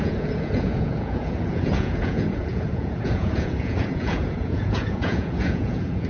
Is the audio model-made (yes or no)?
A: yes